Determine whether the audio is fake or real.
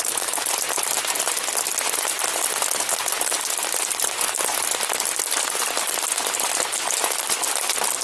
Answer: real